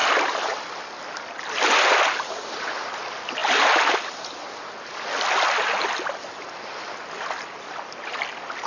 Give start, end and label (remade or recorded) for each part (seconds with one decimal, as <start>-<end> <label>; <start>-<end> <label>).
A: 0.0-8.7 recorded

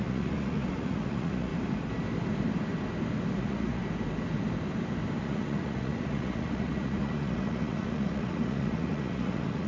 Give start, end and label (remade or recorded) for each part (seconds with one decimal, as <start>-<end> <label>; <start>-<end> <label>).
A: 0.0-1.5 remade; 1.5-3.4 recorded; 3.4-3.8 remade; 3.8-5.2 recorded; 5.2-9.7 remade

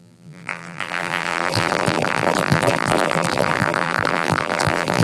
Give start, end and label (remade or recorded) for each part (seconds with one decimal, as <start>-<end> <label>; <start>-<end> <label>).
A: 0.0-5.0 remade

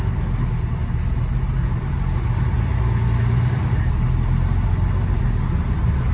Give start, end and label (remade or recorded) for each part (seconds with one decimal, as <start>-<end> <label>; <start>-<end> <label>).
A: 0.0-6.1 recorded